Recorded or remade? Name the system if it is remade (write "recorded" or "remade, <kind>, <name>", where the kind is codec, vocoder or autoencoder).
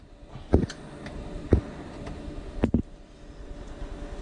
recorded